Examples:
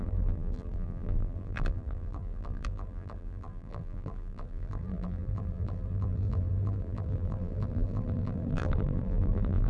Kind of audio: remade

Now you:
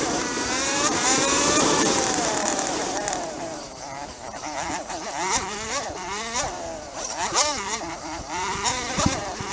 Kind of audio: remade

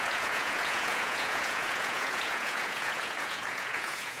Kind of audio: remade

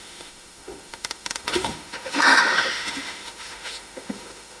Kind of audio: remade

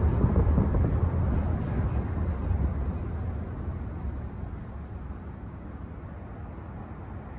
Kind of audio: recorded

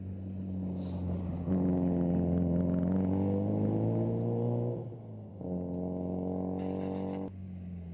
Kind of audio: recorded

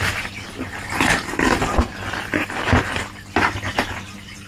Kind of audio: recorded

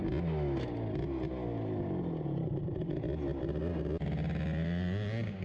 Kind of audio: recorded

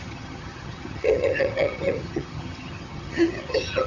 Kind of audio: remade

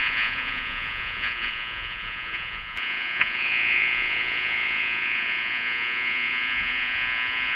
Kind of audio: remade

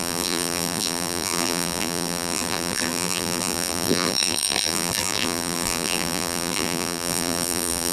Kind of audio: remade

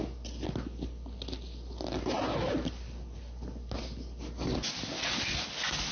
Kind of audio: recorded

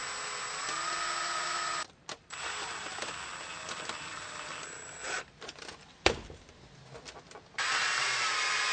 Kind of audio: recorded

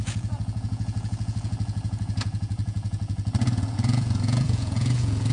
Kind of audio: remade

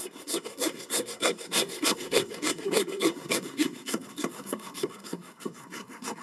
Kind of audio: remade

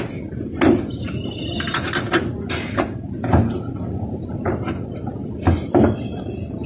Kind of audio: recorded